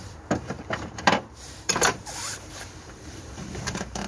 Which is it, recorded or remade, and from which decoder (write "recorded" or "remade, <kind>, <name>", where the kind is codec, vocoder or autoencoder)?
remade, vocoder, BigVGAN v2